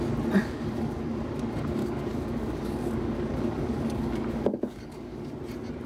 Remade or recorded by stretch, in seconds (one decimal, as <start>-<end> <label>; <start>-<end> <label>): 0.0-0.4 recorded; 0.4-1.2 remade; 1.2-1.8 recorded; 1.8-5.3 remade; 5.3-5.9 recorded